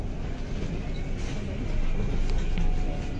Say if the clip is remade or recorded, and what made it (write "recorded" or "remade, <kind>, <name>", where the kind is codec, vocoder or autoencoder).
recorded